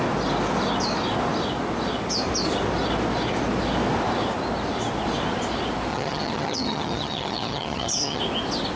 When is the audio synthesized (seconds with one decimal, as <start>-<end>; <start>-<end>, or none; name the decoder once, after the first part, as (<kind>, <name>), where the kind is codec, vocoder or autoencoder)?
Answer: 5.9-8.2 (vocoder, HiFi-GAN)